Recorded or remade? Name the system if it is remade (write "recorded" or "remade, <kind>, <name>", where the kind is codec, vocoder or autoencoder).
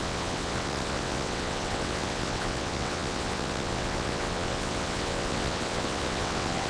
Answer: remade, vocoder, WaveNeXt